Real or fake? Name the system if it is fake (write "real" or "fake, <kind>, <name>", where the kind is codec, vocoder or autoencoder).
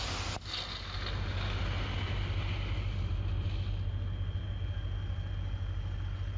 real